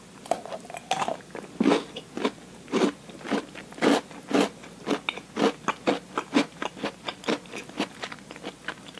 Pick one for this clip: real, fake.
real